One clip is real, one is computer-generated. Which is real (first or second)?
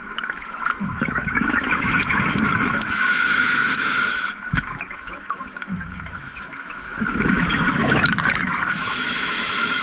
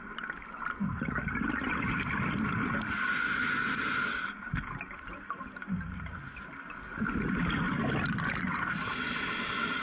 second